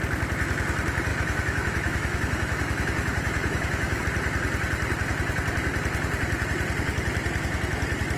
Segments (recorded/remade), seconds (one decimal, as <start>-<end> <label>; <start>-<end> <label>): 0.0-1.1 recorded; 1.1-4.0 remade; 4.0-8.2 recorded